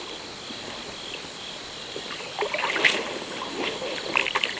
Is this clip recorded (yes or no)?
yes